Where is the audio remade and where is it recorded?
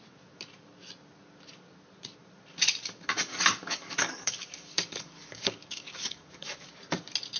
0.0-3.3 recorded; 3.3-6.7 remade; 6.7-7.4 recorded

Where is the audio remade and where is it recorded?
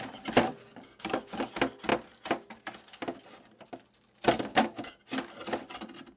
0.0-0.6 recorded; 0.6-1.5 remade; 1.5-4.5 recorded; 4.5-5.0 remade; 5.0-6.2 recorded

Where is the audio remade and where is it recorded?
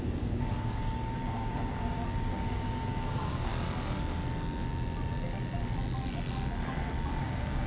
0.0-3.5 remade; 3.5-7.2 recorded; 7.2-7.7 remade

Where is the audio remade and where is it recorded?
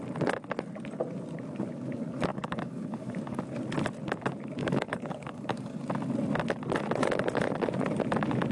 0.0-2.3 recorded; 2.3-3.4 remade; 3.4-4.6 recorded; 4.6-5.8 remade; 5.8-8.5 recorded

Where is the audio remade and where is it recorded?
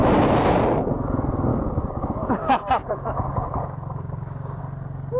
0.0-1.5 recorded; 1.5-4.6 remade; 4.6-5.2 recorded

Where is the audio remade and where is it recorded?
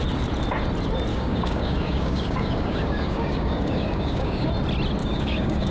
0.0-1.1 recorded; 1.1-4.5 remade; 4.5-5.0 recorded; 5.0-5.7 remade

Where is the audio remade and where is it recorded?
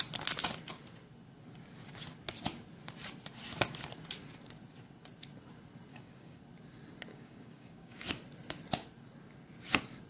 0.0-5.9 recorded; 5.9-6.4 remade; 6.4-7.1 recorded; 7.1-8.1 remade; 8.1-10.1 recorded